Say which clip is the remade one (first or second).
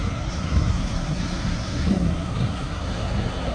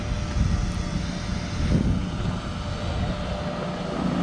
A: first